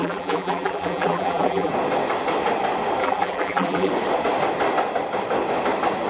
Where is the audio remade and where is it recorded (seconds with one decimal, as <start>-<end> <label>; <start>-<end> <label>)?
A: 0.0-1.7 remade; 1.7-3.0 recorded; 3.0-3.9 remade; 3.9-6.1 recorded

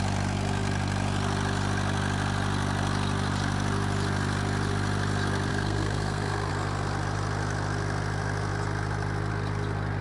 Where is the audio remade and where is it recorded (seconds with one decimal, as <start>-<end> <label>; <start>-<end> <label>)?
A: 0.0-5.5 recorded; 5.5-6.5 remade; 6.5-10.0 recorded

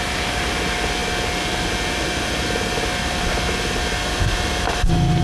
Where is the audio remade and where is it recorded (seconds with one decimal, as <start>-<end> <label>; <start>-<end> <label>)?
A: 0.0-5.2 recorded

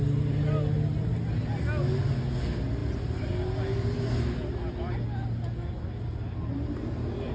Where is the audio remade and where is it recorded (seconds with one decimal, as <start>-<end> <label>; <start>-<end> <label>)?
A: 0.0-7.3 recorded